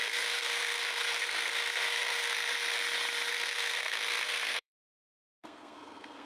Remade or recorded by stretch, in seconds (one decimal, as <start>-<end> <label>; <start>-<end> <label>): 0.0-2.8 remade; 2.8-3.3 recorded; 3.3-6.3 remade